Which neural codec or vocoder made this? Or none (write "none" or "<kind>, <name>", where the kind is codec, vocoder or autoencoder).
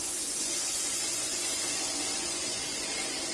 vocoder, Vocos